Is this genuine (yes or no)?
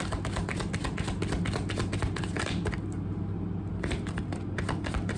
yes